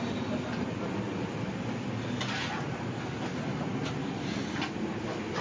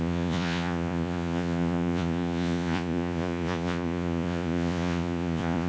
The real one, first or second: first